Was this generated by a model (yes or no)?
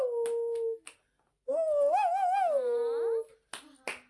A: no